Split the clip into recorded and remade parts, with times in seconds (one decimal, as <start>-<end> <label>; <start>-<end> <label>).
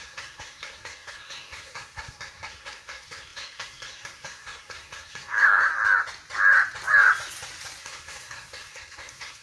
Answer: 0.0-5.7 remade; 5.7-7.8 recorded; 7.8-9.4 remade